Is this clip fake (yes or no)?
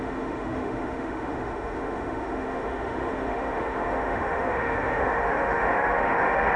yes